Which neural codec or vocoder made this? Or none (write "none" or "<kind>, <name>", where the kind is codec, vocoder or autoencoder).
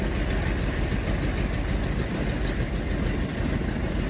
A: none